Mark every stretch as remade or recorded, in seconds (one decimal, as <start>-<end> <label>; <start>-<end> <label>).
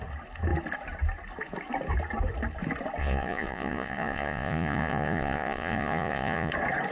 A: 0.0-3.0 recorded; 3.0-6.5 remade; 6.5-6.9 recorded